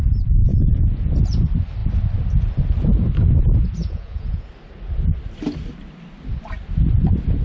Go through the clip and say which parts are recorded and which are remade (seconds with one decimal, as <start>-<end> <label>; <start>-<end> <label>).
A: 0.0-0.5 recorded; 0.5-1.1 remade; 1.1-3.8 recorded; 3.8-4.5 remade; 4.5-7.4 recorded